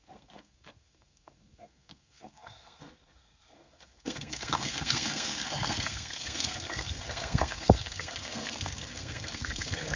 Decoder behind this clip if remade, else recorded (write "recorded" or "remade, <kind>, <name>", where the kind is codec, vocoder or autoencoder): remade, codec, SNAC